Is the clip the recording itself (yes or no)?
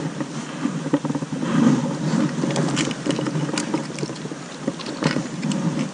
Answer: yes